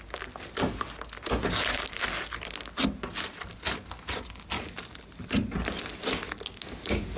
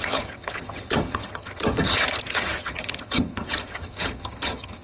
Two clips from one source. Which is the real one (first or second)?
first